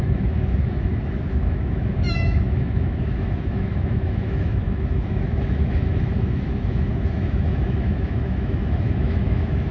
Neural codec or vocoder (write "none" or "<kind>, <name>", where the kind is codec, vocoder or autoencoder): autoencoder, DAC-VAE